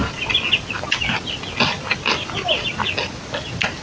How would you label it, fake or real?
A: real